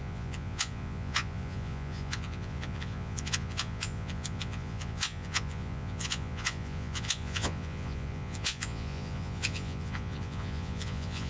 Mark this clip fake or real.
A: fake